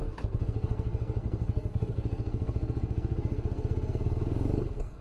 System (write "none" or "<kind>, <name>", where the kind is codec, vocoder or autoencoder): codec, SNAC